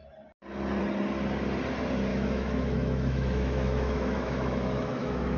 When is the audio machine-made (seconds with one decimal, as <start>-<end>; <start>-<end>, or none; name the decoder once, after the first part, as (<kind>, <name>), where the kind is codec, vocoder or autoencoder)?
2.1-5.4 (autoencoder, DAC-VAE)